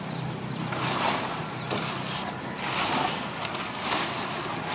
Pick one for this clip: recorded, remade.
recorded